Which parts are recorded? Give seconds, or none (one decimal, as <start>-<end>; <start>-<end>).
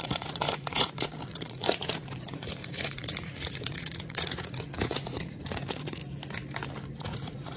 6.0-7.0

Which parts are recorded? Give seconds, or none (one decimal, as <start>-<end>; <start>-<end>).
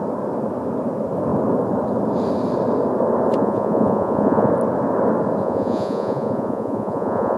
0.0-3.4; 4.5-5.4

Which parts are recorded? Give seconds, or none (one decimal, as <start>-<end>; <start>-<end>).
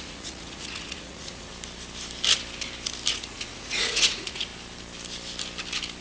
1.5-3.1; 4.5-6.0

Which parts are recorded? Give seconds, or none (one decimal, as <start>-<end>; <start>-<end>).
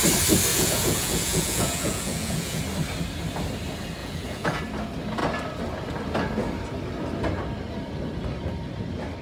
0.0-0.5; 2.6-4.0; 4.6-9.2